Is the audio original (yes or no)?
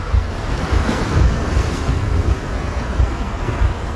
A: no